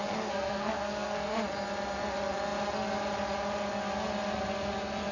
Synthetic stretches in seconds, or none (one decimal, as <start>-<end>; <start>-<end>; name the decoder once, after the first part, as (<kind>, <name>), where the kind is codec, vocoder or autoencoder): 0.0-1.4 (codec, SNAC)

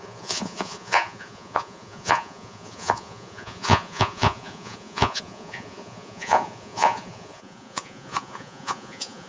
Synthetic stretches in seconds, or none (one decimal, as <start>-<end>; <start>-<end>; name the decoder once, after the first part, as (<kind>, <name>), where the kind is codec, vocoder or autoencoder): 0.0-9.3 (vocoder, Vocos)

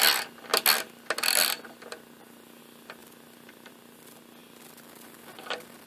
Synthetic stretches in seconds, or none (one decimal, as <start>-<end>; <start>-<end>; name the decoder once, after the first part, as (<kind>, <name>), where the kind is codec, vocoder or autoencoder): 3.0-3.7 (vocoder, BigVGAN v2); 4.4-5.9

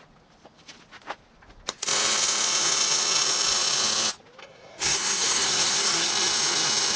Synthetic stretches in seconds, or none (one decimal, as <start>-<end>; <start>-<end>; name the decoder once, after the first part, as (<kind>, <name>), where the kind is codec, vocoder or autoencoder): 4.4-6.1 (codec, SNAC)

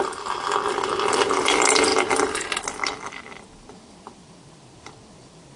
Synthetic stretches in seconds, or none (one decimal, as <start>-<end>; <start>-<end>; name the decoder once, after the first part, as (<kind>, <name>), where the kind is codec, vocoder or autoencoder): 0.0-1.9 (vocoder, BigVGAN v2); 2.6-5.6

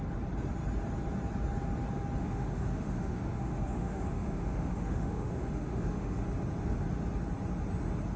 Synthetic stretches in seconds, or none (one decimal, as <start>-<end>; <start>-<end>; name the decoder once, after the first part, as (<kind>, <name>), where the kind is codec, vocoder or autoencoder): 2.2-6.2 (autoencoder, DAC-VAE)

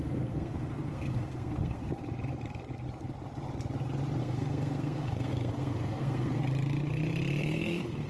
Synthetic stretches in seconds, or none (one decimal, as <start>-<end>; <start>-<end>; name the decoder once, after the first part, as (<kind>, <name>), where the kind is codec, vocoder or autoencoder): 0.0-1.8 (codec, SNAC); 4.2-6.4; 7.4-8.1

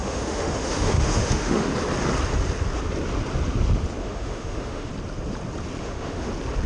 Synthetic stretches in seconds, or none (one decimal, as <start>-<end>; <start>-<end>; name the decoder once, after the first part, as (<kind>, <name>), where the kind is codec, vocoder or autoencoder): 0.0-1.7 (autoencoder, DAC-VAE); 4.0-4.9; 5.8-6.3